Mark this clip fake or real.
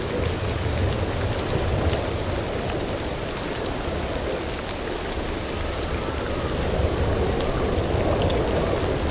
real